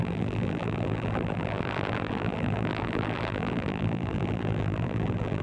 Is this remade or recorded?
remade